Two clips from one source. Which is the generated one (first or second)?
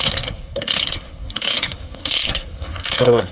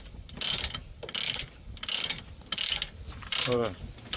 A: first